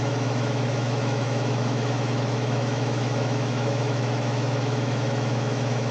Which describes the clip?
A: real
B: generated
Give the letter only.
B